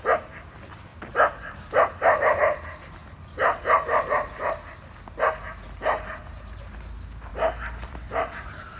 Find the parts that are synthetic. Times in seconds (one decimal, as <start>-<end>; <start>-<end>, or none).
0.9-1.7; 7.3-8.3